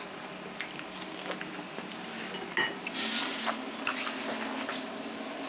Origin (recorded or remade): recorded